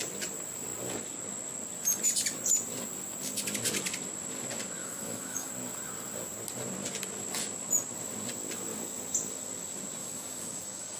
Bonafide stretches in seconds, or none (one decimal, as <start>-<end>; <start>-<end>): 0.0-4.8; 5.5-10.0